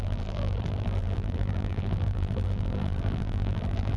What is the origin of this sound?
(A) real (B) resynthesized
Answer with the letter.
B